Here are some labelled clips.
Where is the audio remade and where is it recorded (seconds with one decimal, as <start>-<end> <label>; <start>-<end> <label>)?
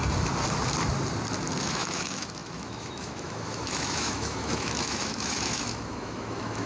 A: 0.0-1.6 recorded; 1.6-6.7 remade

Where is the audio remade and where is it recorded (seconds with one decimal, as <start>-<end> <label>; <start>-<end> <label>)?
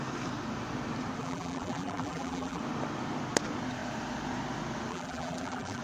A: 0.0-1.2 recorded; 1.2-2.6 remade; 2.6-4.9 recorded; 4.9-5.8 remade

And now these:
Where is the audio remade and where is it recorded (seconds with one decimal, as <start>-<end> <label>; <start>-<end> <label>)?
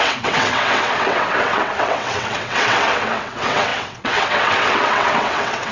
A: 0.0-5.7 remade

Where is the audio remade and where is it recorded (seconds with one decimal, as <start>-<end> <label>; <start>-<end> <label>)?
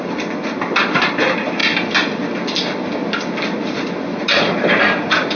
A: 0.0-5.4 recorded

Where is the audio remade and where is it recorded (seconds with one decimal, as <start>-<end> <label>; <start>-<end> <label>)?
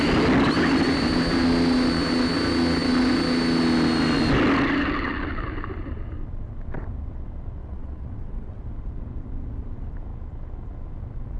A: 0.0-7.6 recorded; 7.6-8.6 remade; 8.6-11.4 recorded